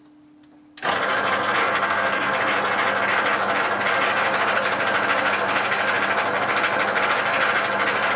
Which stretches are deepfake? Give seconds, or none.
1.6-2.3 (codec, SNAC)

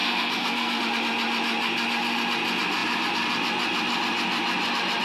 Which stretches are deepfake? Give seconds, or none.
0.0-0.8 (codec, SNAC)

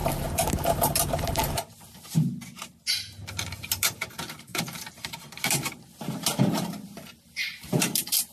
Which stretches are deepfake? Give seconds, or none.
0.0-1.4 (vocoder, BigVGAN v2); 3.4-8.3